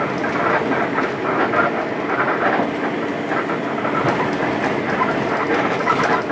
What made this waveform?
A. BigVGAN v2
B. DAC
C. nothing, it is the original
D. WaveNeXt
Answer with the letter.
C